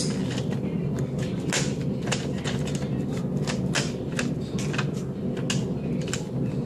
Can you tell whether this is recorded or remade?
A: recorded